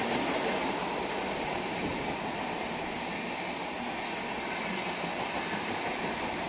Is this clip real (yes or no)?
yes